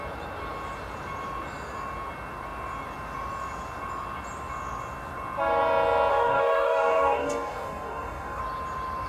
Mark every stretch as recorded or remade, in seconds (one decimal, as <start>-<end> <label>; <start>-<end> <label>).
0.0-6.1 recorded; 6.1-8.4 remade; 8.4-9.1 recorded